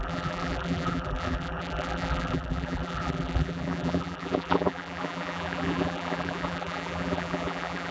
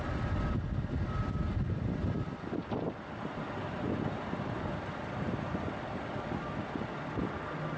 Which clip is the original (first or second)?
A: second